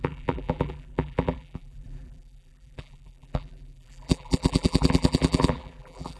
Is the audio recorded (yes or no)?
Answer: no